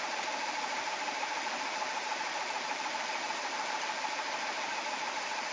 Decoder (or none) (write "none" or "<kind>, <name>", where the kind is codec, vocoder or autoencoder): none